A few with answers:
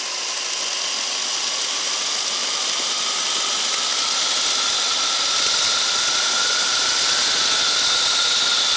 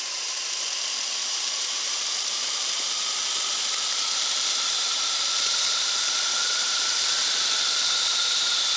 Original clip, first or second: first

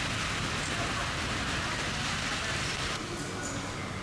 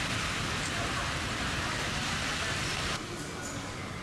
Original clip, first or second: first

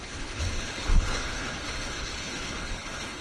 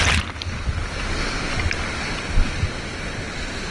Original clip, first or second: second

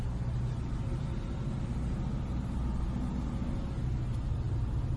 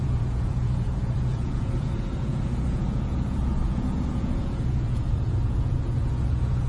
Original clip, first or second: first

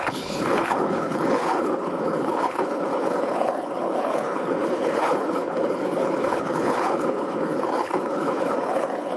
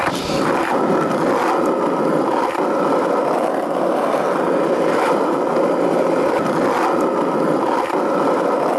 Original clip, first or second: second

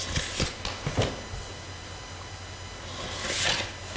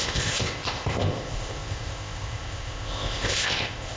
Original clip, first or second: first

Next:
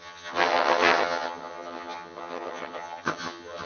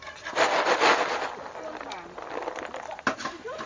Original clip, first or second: second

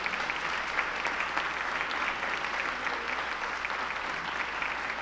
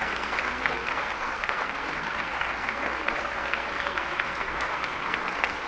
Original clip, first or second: first